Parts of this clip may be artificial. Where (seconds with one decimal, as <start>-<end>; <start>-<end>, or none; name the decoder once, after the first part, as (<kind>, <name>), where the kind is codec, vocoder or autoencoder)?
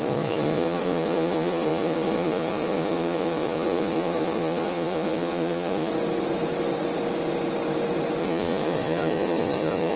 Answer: 0.0-5.9 (vocoder, Vocos); 8.2-10.0